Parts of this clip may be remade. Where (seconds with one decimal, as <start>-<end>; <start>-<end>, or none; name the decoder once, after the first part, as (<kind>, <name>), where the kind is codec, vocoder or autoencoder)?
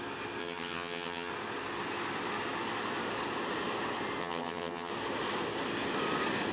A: 0.4-1.3 (vocoder, HiFi-GAN); 4.2-4.9